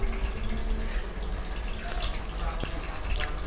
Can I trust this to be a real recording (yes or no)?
yes